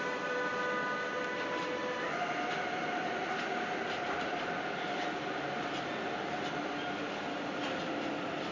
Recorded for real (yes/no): yes